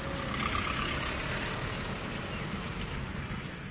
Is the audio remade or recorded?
recorded